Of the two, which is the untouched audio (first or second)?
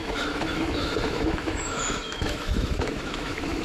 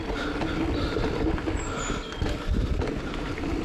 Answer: second